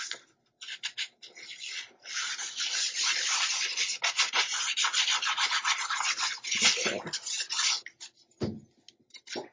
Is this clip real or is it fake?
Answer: real